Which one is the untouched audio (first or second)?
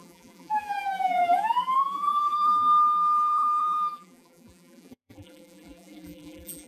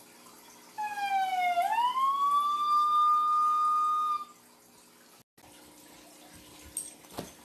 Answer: second